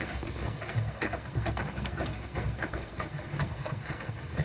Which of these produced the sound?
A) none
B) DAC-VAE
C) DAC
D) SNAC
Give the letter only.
D